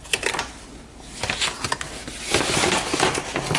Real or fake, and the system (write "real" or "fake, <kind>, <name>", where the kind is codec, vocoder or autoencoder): real